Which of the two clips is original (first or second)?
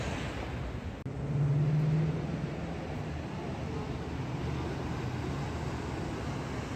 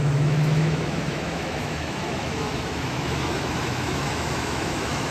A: first